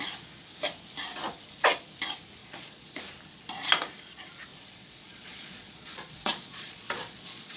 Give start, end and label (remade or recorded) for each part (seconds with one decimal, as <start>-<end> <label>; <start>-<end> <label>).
0.0-2.4 recorded; 2.4-2.9 remade; 2.9-4.5 recorded; 4.5-7.6 remade